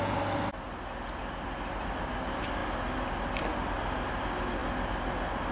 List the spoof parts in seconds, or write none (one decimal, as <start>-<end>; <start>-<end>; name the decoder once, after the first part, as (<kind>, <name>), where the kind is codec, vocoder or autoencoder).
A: none

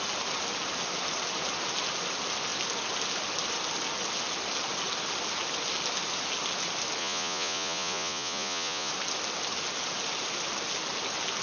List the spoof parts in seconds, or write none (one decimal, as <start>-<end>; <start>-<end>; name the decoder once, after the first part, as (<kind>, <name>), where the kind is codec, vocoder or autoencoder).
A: 7.0-8.9 (vocoder, Vocos)